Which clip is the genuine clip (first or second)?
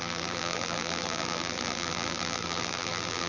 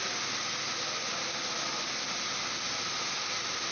second